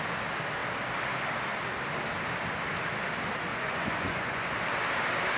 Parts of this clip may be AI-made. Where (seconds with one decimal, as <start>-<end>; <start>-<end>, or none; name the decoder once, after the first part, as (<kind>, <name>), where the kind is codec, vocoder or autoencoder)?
3.5-4.5 (vocoder, Vocos)